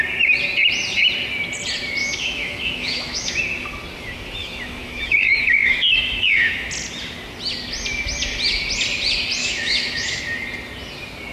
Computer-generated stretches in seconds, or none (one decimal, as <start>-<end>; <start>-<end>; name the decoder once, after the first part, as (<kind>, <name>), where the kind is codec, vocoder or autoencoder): 2.0-3.4 (autoencoder, DAC-VAE); 4.4-6.7; 9.4-10.2